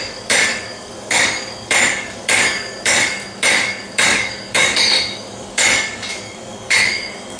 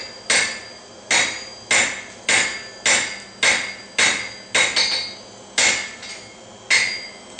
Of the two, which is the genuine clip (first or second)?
second